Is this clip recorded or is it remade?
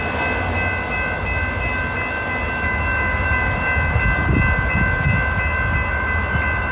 recorded